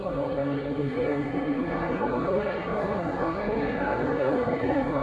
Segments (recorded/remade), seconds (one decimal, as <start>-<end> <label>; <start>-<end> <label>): 0.0-5.0 remade